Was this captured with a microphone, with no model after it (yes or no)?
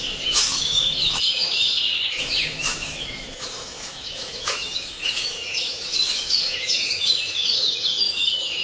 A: no